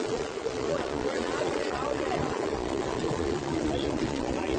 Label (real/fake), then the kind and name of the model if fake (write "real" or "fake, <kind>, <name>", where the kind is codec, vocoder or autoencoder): fake, vocoder, Vocos